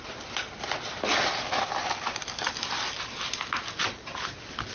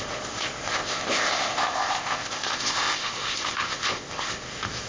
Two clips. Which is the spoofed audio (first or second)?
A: second